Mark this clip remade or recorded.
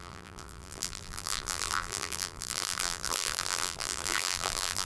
remade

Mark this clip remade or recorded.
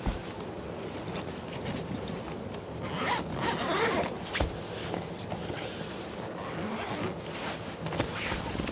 recorded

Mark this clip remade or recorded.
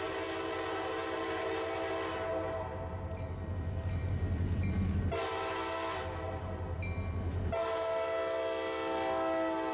recorded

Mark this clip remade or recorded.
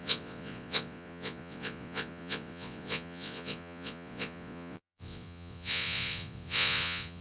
remade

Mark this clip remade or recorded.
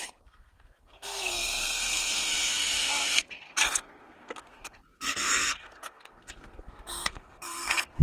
remade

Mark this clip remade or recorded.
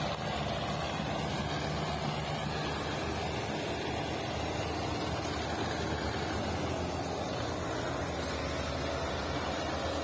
recorded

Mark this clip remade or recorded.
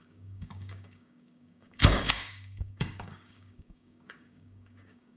remade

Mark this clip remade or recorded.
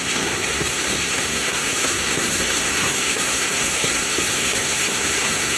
remade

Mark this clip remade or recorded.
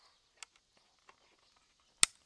recorded